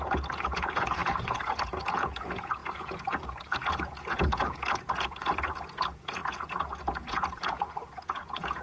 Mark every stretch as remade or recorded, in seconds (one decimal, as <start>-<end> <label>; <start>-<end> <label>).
0.0-8.6 remade